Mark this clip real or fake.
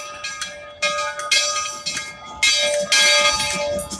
real